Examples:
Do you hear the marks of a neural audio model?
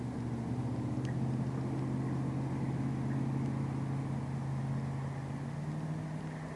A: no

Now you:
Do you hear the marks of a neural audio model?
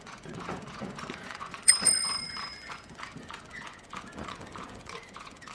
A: yes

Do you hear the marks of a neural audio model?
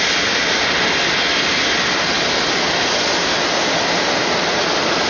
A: no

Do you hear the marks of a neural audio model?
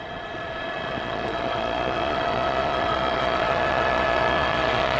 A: yes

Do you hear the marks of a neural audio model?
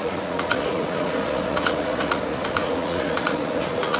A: yes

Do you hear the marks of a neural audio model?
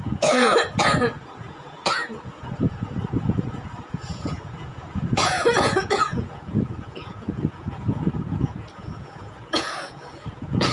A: yes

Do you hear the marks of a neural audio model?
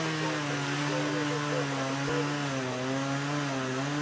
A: no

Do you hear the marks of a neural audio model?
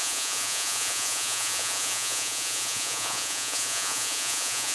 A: yes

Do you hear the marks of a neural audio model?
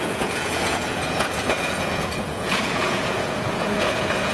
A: yes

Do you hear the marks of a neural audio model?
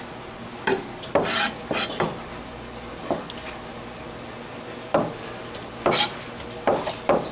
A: no